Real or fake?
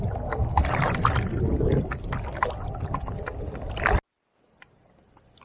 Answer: real